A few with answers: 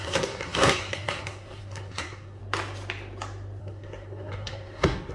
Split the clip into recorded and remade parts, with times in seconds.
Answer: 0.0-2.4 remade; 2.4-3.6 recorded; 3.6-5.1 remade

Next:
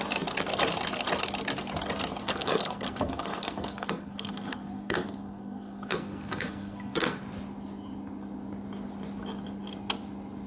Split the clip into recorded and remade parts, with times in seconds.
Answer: 0.0-2.2 recorded; 2.2-7.2 remade; 7.2-10.5 recorded

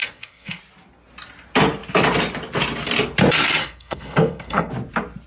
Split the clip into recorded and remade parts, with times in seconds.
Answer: 0.0-0.6 remade; 0.6-3.6 recorded; 3.6-4.7 remade; 4.7-5.3 recorded